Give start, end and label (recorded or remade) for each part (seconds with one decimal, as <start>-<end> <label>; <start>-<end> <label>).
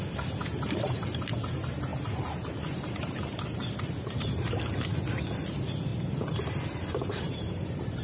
0.0-0.4 recorded; 0.4-1.3 remade; 1.3-1.9 recorded; 1.9-4.5 remade; 4.5-5.9 recorded; 5.9-8.0 remade